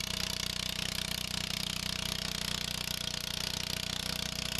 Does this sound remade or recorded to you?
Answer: recorded